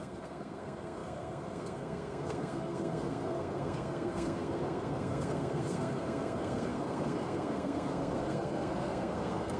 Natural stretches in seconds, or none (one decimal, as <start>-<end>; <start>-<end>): none